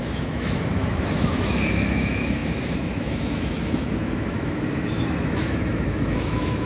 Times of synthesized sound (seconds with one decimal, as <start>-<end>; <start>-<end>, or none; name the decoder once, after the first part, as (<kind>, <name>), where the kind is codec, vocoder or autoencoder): 0.0-6.7 (autoencoder, DAC-VAE)